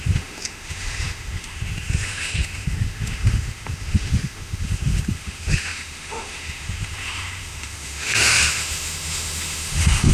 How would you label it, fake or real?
fake